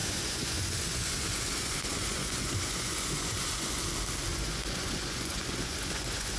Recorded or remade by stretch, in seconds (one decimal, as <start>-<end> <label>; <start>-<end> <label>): 0.0-3.8 remade; 3.8-4.3 recorded; 4.3-6.4 remade